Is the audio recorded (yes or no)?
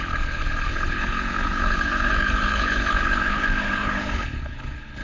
no